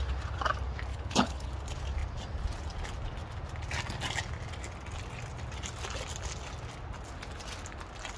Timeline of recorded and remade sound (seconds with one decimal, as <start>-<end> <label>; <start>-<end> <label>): 0.0-0.9 recorded; 0.9-1.5 remade; 1.5-8.2 recorded